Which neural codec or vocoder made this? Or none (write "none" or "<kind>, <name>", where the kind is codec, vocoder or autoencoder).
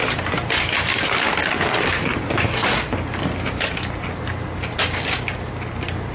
none